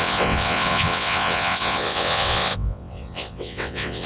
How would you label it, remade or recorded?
remade